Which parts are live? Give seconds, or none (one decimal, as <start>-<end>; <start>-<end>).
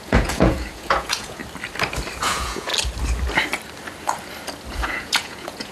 1.4-2.2; 2.7-4.7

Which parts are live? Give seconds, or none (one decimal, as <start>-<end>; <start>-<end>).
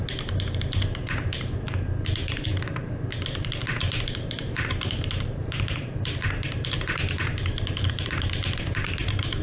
3.6-4.1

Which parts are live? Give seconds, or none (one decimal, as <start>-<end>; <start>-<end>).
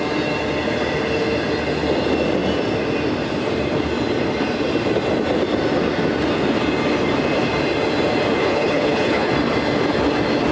0.0-8.4; 9.3-10.5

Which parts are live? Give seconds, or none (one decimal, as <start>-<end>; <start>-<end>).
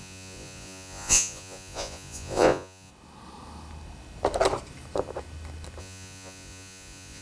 2.9-5.8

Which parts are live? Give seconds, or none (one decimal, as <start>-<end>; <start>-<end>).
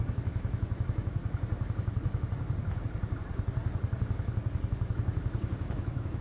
1.2-4.7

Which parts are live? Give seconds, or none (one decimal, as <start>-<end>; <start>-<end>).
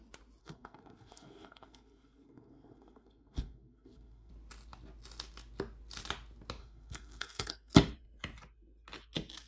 0.0-0.4; 4.3-6.6; 7.7-9.5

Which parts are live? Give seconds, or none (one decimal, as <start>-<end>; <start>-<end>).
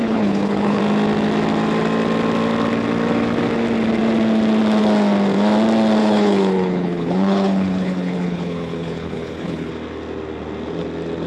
0.8-6.0; 9.7-11.3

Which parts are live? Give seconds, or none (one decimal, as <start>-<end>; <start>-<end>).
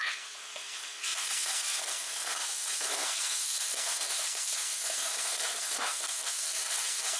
none